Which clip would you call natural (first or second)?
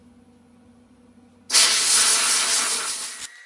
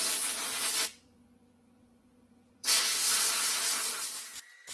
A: first